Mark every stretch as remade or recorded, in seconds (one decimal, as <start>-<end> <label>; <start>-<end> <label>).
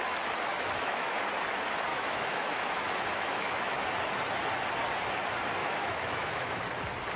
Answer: 0.0-0.5 recorded; 0.5-1.2 remade; 1.2-1.9 recorded; 1.9-2.7 remade; 2.7-3.1 recorded; 3.1-3.8 remade; 3.8-5.6 recorded; 5.6-6.6 remade; 6.6-7.2 recorded